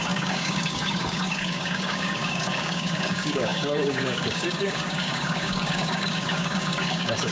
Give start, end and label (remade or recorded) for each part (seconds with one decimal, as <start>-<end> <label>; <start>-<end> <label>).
0.0-7.3 remade